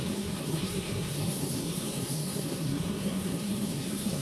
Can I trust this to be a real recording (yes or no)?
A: no